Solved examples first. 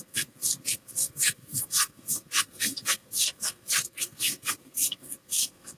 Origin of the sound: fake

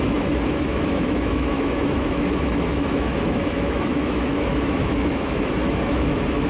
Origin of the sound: fake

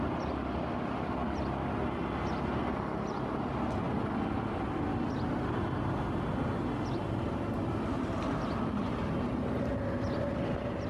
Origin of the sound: real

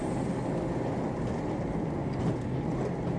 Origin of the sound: real